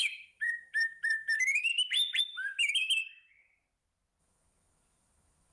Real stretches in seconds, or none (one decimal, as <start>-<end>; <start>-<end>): 1.7-2.2; 3.0-4.2